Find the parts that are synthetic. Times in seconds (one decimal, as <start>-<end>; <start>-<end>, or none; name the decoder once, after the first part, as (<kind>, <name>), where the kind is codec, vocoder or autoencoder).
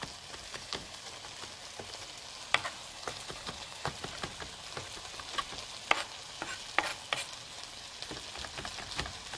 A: 0.5-1.0 (codec, HILCodec); 2.9-3.9